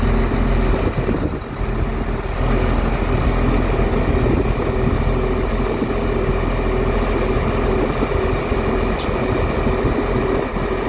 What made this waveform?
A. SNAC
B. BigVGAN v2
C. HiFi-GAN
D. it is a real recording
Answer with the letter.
D